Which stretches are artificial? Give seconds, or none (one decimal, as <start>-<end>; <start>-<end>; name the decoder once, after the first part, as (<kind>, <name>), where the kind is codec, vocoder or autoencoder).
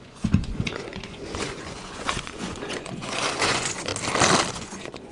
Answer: 0.0-3.9 (vocoder, Vocos); 4.5-5.1